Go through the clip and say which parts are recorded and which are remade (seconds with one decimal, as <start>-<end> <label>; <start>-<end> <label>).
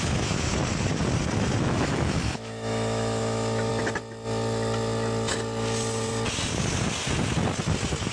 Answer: 0.0-0.5 remade; 0.5-1.6 recorded; 1.6-3.7 remade; 3.7-8.1 recorded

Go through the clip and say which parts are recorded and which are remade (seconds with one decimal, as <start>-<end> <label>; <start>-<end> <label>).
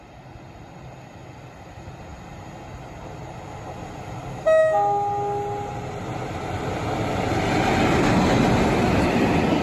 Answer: 0.0-9.6 recorded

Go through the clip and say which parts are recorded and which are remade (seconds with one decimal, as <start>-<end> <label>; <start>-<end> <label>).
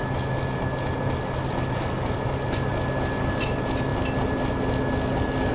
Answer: 0.0-5.5 recorded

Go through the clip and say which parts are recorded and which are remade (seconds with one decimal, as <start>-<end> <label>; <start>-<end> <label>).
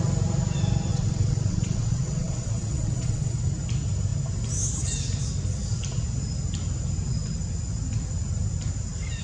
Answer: 0.0-0.9 recorded; 0.9-3.4 remade; 3.4-9.2 recorded